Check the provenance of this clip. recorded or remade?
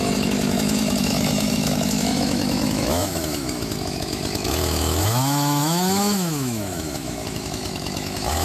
remade